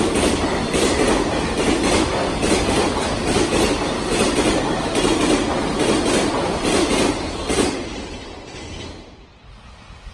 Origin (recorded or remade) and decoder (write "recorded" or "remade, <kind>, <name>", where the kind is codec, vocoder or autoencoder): recorded